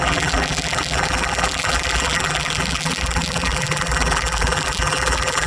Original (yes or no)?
no